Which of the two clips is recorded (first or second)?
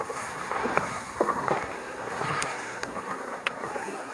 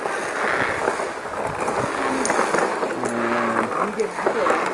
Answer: second